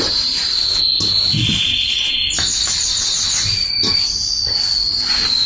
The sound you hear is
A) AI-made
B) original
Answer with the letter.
B